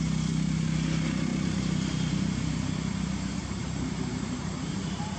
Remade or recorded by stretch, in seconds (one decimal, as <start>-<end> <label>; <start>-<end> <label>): 0.0-1.3 recorded; 1.3-2.1 remade; 2.1-3.4 recorded; 3.4-4.8 remade; 4.8-5.2 recorded